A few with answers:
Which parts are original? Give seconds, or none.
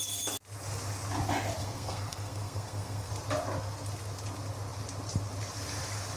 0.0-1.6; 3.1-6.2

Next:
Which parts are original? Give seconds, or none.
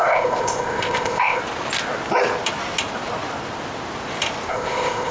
1.4-4.5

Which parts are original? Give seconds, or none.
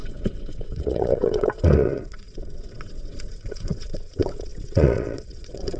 none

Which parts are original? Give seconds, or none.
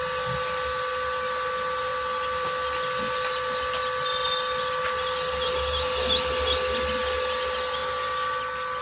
0.0-8.8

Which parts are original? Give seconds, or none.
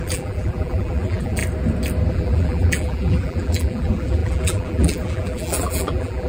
1.4-2.1